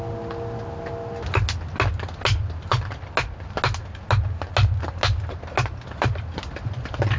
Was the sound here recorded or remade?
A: recorded